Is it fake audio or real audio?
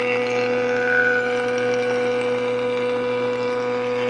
real